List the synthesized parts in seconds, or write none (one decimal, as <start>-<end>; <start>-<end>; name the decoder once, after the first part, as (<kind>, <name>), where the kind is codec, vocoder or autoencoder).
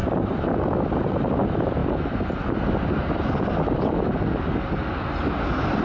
none